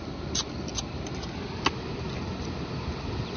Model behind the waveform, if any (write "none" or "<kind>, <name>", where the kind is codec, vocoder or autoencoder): none